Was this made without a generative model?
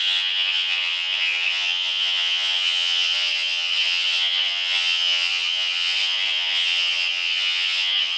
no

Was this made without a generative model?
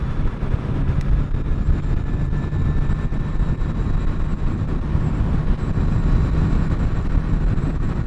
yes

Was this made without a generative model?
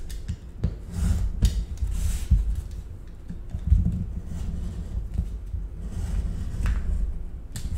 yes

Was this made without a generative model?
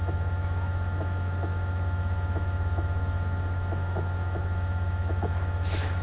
no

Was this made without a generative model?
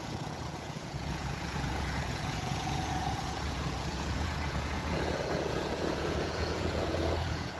no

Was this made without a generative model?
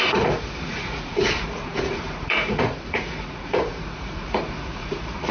no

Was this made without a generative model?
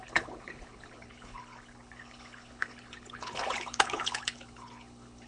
no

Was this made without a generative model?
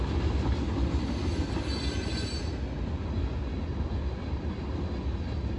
yes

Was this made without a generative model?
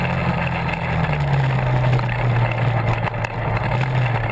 yes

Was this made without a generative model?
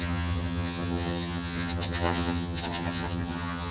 no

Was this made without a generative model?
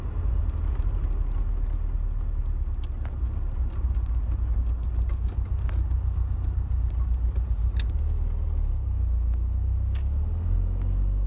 yes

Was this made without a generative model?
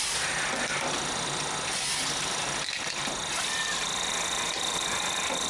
yes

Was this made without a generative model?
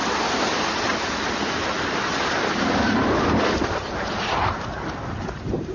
yes